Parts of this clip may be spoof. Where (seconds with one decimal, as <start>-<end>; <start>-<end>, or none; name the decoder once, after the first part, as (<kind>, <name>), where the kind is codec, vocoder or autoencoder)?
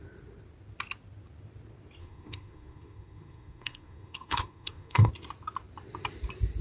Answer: 2.0-5.1 (codec, SNAC)